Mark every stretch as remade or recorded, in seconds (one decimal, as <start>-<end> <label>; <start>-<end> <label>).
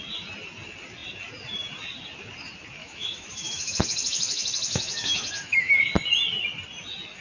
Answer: 0.0-2.8 recorded; 2.8-5.7 remade; 5.7-7.2 recorded